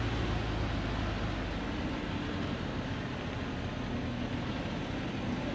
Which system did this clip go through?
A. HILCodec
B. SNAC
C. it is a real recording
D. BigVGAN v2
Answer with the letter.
C